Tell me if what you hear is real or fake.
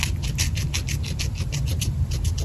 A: real